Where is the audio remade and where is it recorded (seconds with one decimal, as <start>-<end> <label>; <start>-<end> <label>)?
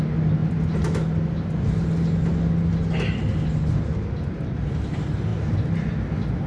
0.0-6.5 recorded